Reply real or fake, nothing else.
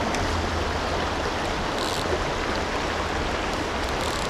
real